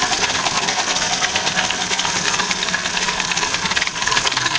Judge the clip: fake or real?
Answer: fake